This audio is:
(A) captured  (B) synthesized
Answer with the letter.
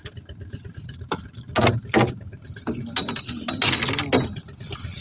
A